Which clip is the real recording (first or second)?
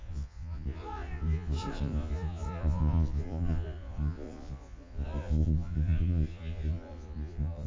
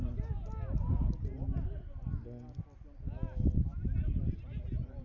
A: second